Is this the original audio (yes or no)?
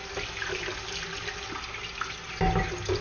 yes